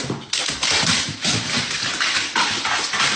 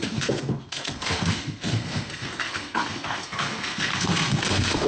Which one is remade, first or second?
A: second